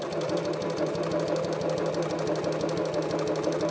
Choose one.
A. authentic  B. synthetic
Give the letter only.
A